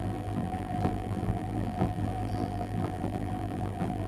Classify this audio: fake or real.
fake